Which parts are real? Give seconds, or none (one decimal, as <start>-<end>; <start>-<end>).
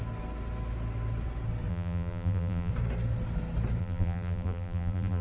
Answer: 0.0-1.7; 2.7-3.8